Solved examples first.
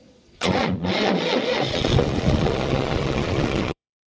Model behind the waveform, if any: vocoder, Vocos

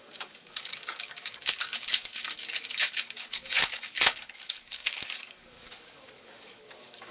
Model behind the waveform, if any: codec, DAC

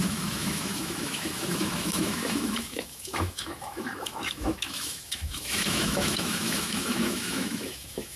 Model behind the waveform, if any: autoencoder, DAC-VAE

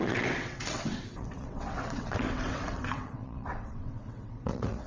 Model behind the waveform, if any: vocoder, WaveNeXt